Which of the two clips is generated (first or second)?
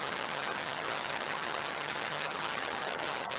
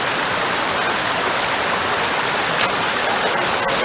first